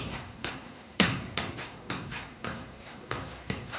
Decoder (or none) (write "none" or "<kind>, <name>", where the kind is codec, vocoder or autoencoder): codec, SNAC